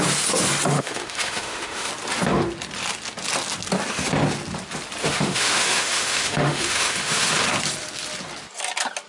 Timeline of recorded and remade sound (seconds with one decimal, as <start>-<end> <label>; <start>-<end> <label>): 0.0-0.7 recorded; 0.7-1.9 remade; 1.9-5.0 recorded; 5.0-7.3 remade; 7.3-9.1 recorded